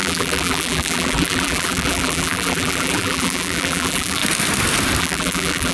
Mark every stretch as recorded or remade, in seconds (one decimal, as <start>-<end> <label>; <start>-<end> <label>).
0.0-4.2 remade; 4.2-5.0 recorded; 5.0-5.7 remade